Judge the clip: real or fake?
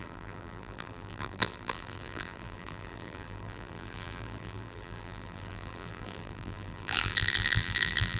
fake